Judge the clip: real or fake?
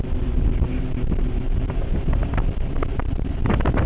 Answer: fake